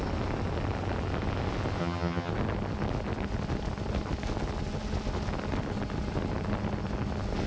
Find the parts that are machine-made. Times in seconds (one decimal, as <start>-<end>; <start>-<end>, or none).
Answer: 1.8-2.3